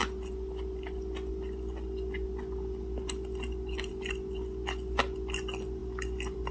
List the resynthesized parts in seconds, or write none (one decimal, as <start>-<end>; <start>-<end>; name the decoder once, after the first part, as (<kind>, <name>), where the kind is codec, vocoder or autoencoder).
5.8-6.5 (vocoder, BigVGAN v2)